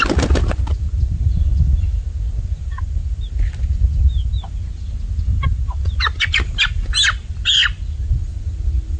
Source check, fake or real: real